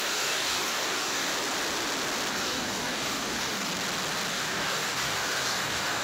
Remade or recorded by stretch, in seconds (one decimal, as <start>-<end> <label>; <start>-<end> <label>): 0.0-1.3 remade; 1.3-2.3 recorded; 2.3-3.7 remade; 3.7-4.3 recorded; 4.3-6.0 remade